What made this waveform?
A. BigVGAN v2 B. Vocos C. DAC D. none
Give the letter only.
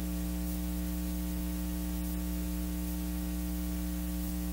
D